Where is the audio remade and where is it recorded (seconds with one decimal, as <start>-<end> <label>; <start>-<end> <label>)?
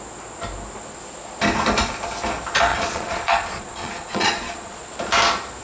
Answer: 0.0-2.7 recorded; 2.7-4.9 remade; 4.9-5.6 recorded